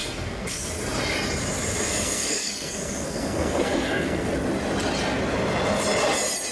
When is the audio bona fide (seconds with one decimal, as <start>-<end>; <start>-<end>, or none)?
0.7-1.8; 4.3-6.5